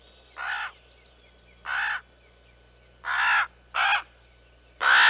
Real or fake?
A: real